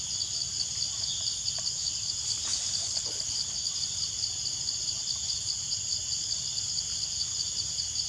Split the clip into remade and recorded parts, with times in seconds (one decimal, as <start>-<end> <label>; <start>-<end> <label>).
0.0-2.8 recorded; 2.8-3.7 remade; 3.7-8.1 recorded